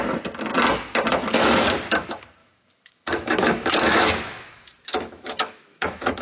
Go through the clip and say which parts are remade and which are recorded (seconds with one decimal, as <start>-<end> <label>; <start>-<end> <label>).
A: 0.0-2.4 recorded; 2.4-6.2 remade